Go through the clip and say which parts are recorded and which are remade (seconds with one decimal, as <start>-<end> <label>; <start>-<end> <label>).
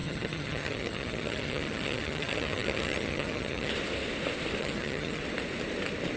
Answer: 0.0-3.7 remade; 3.7-4.6 recorded; 4.6-5.2 remade; 5.2-6.2 recorded